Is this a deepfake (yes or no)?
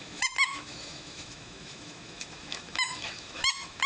yes